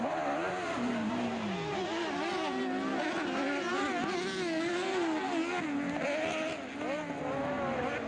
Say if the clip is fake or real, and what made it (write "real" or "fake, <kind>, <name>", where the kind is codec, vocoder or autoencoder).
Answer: real